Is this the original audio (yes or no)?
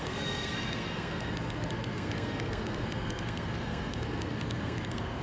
no